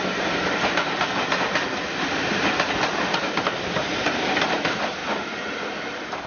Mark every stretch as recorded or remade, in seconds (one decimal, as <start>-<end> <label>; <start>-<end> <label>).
0.0-5.0 remade; 5.0-6.3 recorded